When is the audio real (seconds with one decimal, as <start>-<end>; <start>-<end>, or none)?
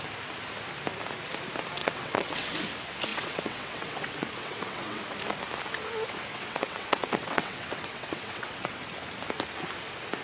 0.0-1.8; 2.6-3.1; 5.0-6.3; 8.8-10.2